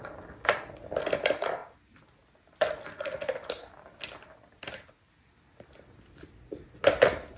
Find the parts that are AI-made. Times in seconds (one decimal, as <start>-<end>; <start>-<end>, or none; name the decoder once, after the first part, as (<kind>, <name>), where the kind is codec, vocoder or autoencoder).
none

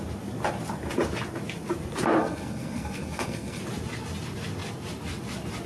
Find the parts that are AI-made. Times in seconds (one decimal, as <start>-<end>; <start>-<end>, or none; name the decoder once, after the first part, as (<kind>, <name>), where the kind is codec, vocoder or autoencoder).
2.2-3.6 (codec, SNAC)

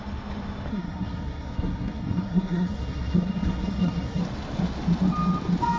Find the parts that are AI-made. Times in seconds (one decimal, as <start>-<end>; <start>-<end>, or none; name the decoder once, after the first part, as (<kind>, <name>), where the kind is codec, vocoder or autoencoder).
0.7-4.2 (codec, SNAC)

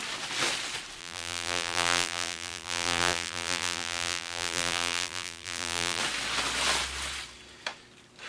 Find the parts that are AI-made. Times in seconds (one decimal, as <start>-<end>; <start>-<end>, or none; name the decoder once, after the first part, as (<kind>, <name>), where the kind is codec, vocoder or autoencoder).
1.0-6.0 (vocoder, BigVGAN v2)

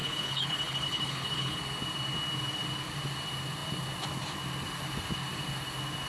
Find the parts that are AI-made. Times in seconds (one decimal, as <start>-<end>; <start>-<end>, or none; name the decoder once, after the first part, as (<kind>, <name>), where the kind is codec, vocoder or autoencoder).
0.0-1.6 (codec, HILCodec)